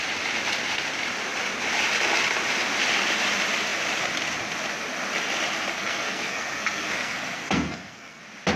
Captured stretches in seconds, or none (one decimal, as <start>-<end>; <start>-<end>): 0.0-5.7; 8.2-8.6